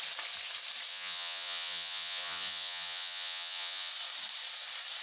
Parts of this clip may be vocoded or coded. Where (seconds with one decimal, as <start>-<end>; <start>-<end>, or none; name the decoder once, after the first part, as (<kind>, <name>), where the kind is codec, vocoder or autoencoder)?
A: 0.9-3.9 (vocoder, Vocos)